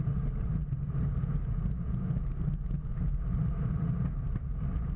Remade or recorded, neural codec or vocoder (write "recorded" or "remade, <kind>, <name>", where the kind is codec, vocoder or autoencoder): recorded